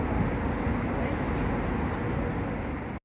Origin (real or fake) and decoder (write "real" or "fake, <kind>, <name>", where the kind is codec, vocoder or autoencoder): real